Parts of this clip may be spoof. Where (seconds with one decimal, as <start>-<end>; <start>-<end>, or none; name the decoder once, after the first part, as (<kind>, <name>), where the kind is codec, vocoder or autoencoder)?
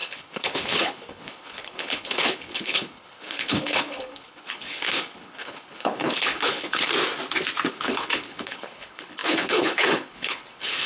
0.0-6.9 (codec, HILCodec); 7.7-10.9